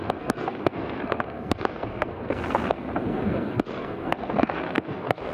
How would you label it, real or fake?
fake